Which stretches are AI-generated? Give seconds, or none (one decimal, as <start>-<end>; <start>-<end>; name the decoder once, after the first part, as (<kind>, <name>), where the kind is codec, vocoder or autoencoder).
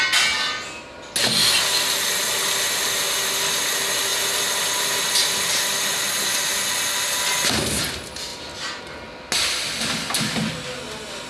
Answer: 4.1-5.0 (vocoder, BigVGAN v2); 8.3-8.8